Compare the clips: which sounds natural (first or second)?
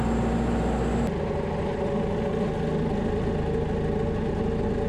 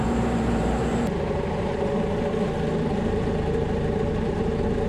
first